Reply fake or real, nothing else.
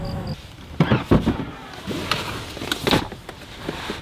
real